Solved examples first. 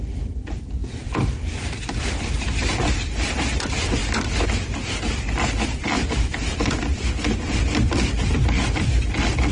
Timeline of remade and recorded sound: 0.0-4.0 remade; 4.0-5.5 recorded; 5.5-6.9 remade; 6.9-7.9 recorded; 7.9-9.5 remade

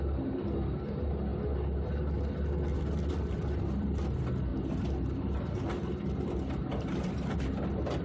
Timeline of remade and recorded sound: 0.0-8.0 recorded

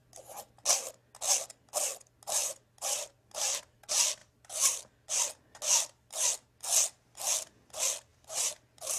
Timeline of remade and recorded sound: 0.0-2.4 recorded; 2.4-3.6 remade; 3.6-4.2 recorded; 4.2-5.1 remade; 5.1-8.1 recorded; 8.1-9.0 remade

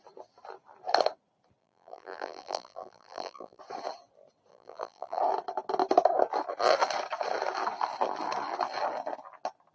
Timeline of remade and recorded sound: 0.0-1.6 recorded; 1.6-3.6 remade; 3.6-4.5 recorded; 4.5-5.2 remade; 5.2-9.7 recorded

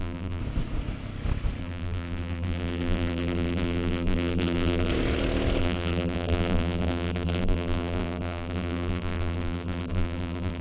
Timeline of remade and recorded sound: 0.0-0.4 remade; 0.4-1.6 recorded; 1.6-4.9 remade; 4.9-5.6 recorded; 5.6-10.6 remade

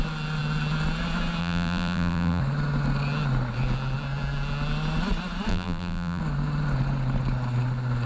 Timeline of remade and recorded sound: 0.0-1.4 recorded; 1.4-2.4 remade; 2.4-5.5 recorded; 5.5-6.2 remade; 6.2-8.1 recorded